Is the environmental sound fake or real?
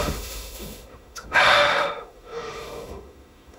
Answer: fake